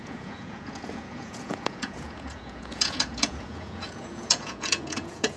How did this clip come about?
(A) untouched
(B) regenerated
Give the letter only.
B